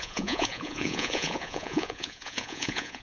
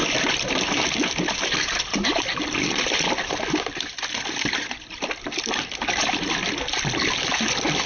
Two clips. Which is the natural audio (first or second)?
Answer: second